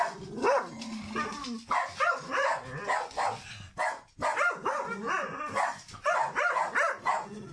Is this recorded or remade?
recorded